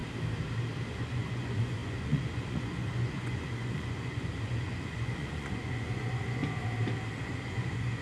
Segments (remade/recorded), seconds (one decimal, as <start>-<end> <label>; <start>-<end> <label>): 0.0-0.9 recorded; 0.9-6.4 remade; 6.4-7.2 recorded; 7.2-8.0 remade